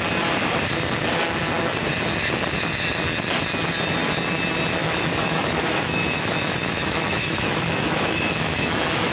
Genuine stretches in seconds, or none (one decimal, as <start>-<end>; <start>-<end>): 0.0-4.8